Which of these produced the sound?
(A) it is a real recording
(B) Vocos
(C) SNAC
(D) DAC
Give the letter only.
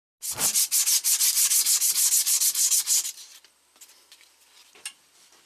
A